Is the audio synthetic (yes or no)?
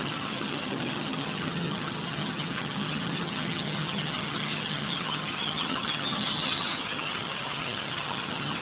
yes